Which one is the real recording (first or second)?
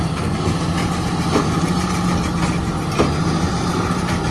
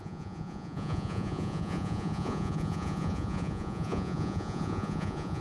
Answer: first